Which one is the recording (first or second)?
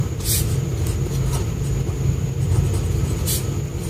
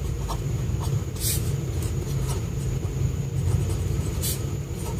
first